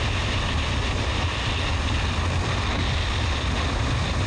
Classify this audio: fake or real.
real